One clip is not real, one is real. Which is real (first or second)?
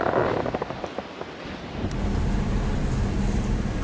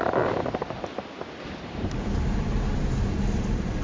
first